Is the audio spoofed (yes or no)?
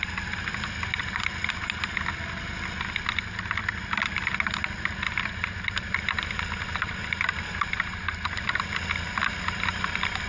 no